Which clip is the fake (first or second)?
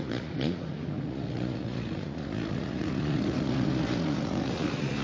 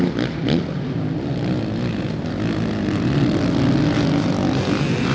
first